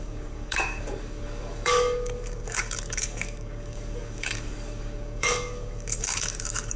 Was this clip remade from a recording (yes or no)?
yes